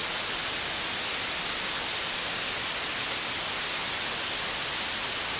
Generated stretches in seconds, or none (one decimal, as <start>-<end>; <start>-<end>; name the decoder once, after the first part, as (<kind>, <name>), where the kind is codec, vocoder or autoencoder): none